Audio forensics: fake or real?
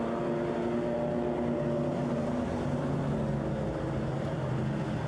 real